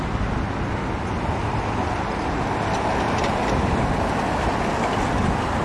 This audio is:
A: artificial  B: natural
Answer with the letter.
B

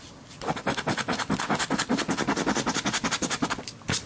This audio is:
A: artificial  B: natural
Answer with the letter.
B